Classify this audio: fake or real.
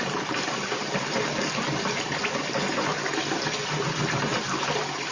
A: real